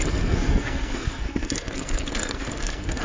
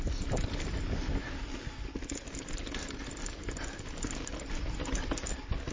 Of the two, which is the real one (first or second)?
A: second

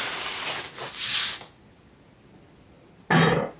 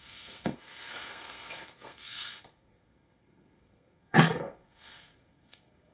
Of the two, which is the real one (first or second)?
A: first